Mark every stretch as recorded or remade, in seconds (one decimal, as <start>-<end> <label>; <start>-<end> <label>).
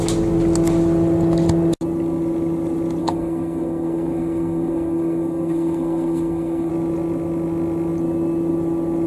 0.0-3.0 recorded; 3.0-6.7 remade; 6.7-9.1 recorded